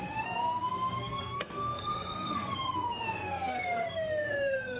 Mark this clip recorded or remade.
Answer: remade